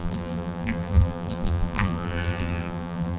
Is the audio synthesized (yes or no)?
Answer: yes